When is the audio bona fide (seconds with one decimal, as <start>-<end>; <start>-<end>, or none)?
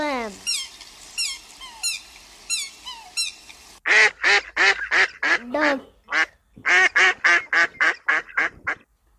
0.0-9.2